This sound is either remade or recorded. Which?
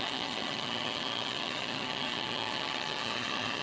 remade